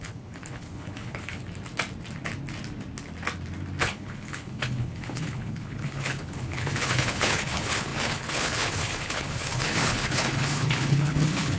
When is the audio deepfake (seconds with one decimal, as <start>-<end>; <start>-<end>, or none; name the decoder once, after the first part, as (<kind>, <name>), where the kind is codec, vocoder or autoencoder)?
0.0-1.4 (codec, HILCodec); 3.8-11.6

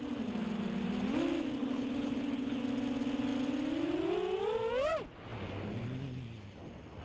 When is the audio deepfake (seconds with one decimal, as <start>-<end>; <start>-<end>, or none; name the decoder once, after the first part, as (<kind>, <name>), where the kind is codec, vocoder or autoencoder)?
1.6-2.6 (codec, HILCodec)

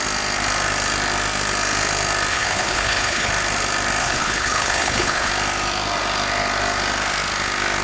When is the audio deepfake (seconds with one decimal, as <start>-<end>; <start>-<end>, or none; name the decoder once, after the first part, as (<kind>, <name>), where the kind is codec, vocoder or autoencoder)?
2.3-3.3 (codec, HILCodec); 4.0-5.3

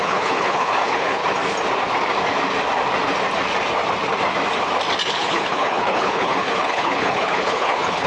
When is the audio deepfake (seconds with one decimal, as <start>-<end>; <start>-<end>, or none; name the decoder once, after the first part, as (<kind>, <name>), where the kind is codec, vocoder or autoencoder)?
0.0-1.2 (codec, HILCodec); 5.1-8.1

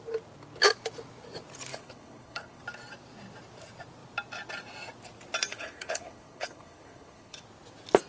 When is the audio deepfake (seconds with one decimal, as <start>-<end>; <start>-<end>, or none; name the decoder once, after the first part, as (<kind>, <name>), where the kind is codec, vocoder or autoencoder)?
1.7-2.6 (codec, HILCodec); 5.5-7.4

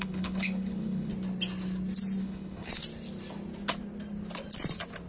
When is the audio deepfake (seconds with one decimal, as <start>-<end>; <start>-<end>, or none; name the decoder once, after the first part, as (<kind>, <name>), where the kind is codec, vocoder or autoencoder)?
0.0-1.1 (codec, HILCodec); 2.2-2.7

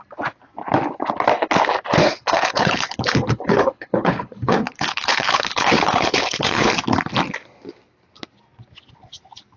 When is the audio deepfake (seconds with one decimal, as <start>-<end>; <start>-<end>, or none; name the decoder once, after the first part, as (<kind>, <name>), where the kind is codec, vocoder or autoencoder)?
2.0-6.7 (codec, HILCodec)